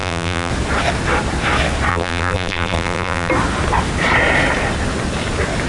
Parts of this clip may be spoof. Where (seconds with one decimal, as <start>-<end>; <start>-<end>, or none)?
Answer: 0.0-0.5; 1.9-3.3